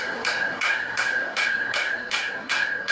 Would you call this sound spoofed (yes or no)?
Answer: yes